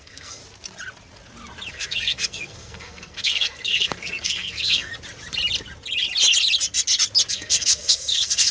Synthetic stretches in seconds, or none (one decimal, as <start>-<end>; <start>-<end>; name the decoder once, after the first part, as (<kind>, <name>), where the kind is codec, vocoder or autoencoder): 0.0-0.4 (codec, SNAC); 1.7-4.9; 7.3-8.5